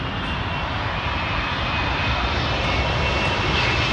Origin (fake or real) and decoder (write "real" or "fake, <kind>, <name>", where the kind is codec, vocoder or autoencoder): real